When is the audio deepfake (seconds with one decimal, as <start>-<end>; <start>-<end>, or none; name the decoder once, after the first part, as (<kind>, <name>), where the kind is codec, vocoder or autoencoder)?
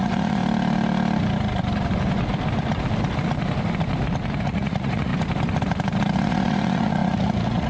0.0-0.4 (vocoder, Vocos); 4.4-5.1; 6.2-7.7